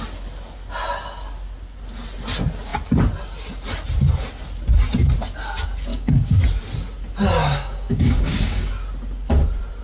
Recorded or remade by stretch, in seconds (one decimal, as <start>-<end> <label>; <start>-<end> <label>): 0.0-5.9 recorded; 5.9-6.4 remade; 6.4-7.4 recorded; 7.4-8.7 remade; 8.7-9.8 recorded